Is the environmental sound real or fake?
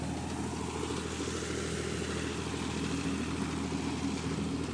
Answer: real